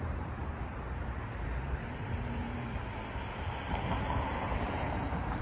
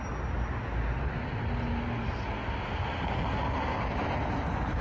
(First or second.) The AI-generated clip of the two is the first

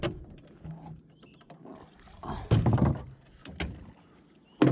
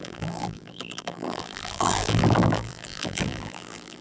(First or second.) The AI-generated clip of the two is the second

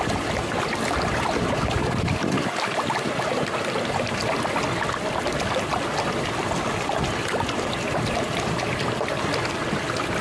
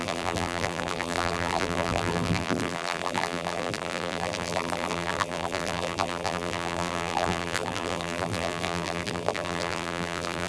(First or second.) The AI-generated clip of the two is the second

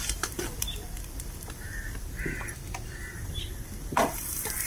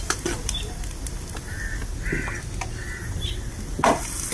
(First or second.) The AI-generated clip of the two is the first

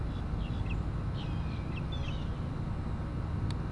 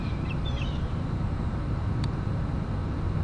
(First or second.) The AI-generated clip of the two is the second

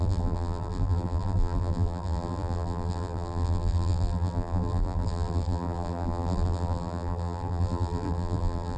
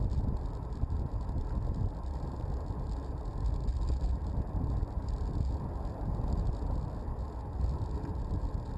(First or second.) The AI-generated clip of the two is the first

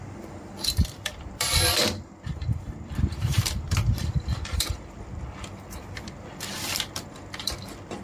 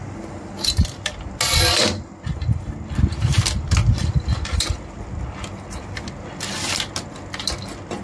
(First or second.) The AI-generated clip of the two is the first